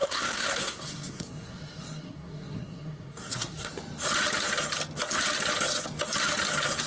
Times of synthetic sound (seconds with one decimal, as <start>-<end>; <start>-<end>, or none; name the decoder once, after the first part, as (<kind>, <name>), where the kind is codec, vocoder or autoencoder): 0.0-3.7 (codec, SNAC)